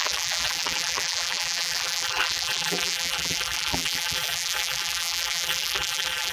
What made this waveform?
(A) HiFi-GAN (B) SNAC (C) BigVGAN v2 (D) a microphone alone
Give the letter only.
C